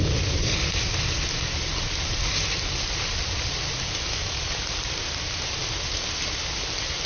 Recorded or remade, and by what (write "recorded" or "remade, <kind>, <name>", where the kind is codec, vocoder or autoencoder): recorded